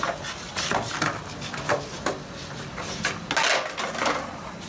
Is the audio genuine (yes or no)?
yes